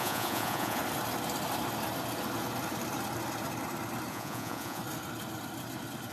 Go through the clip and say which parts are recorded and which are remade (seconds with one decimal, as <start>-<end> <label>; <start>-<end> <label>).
0.0-0.8 remade; 0.8-4.1 recorded; 4.1-4.8 remade; 4.8-6.1 recorded